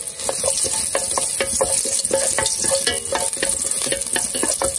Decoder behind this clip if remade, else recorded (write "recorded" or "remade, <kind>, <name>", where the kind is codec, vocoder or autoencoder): recorded